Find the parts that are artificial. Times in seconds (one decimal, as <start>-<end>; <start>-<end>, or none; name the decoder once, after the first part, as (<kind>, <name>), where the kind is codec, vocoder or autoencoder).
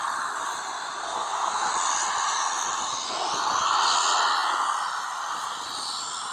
1.0-1.7 (codec, SNAC)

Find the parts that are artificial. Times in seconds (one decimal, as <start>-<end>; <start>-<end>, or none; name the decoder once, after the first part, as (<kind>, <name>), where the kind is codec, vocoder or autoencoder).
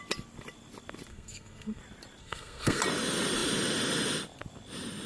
1.1-1.8 (codec, SNAC); 2.2-2.8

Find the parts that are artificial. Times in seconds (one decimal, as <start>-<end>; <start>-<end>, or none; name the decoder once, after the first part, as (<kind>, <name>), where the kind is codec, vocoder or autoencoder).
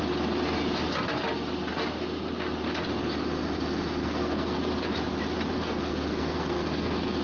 4.0-4.6 (codec, SNAC); 5.6-7.2